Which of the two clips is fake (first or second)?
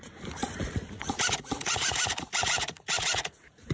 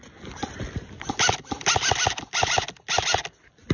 first